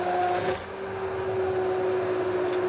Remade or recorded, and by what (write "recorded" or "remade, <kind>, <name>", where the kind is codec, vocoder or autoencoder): recorded